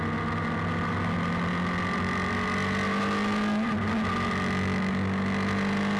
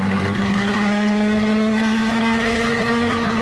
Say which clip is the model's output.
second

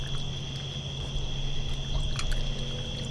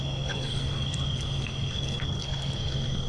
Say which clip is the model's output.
second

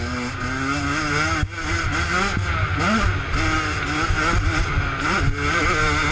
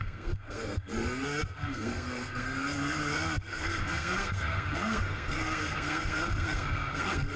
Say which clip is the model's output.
second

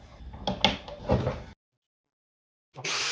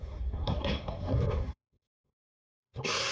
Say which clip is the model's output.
second